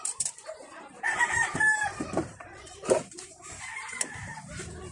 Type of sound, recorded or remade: remade